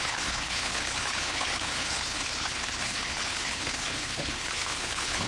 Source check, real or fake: fake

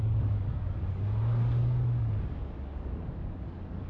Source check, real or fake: fake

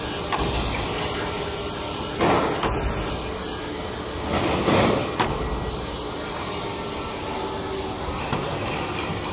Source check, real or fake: real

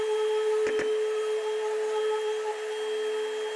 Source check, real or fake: real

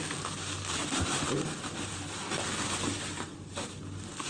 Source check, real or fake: real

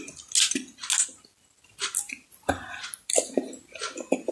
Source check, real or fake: real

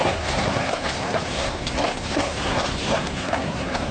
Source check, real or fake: fake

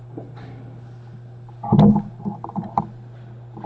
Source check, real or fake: real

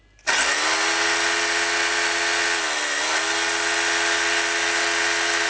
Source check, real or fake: real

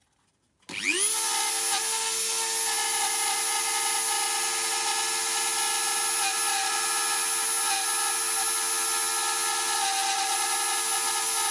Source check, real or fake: real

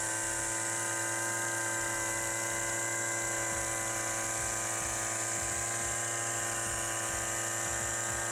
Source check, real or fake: real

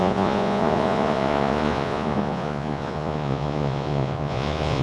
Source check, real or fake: fake